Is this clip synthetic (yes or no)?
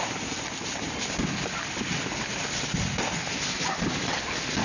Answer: no